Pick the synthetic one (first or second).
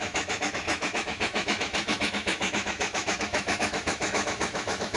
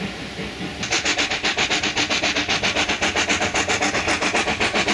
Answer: first